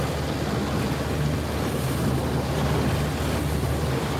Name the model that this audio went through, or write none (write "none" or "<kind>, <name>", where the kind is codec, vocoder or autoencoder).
vocoder, BigVGAN v2